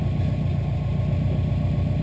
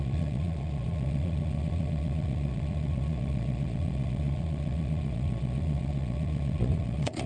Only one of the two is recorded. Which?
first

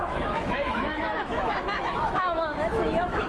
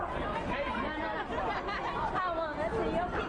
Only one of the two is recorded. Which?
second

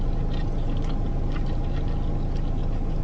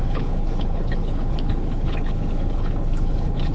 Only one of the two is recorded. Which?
first